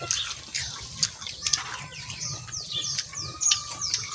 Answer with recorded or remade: recorded